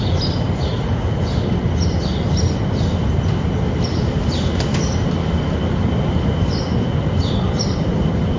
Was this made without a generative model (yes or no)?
yes